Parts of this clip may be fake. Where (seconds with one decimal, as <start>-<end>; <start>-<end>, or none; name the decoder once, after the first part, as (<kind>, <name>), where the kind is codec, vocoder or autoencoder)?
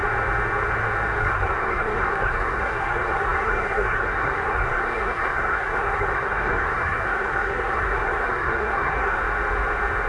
1.2-9.2 (codec, SNAC)